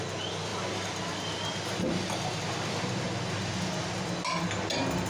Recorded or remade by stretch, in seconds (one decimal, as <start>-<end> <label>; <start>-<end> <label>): 0.0-5.1 recorded